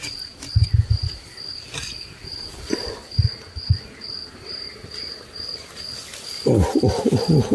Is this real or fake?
real